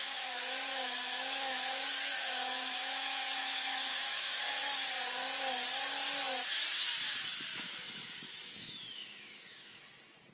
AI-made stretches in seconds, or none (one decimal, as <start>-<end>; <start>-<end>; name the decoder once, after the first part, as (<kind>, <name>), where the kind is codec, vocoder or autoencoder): 0.0-4.4 (autoencoder, DAC-VAE); 7.5-9.8